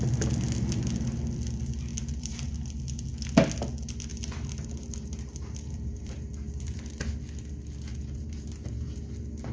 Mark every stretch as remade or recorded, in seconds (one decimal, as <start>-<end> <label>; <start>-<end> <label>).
0.0-1.9 recorded; 1.9-2.5 remade; 2.5-4.1 recorded; 4.1-7.0 remade; 7.0-7.9 recorded; 7.9-9.1 remade; 9.1-9.5 recorded